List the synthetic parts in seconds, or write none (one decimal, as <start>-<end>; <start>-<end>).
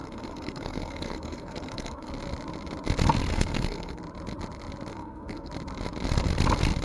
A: 0.0-2.1; 3.3-4.0; 4.9-5.5